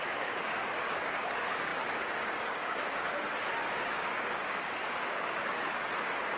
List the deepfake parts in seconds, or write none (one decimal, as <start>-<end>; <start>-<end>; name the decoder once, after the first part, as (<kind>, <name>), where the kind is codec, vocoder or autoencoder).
0.0-6.4 (codec, DAC)